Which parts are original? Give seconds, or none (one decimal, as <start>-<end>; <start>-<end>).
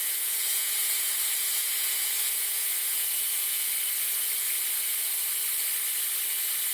3.7-6.7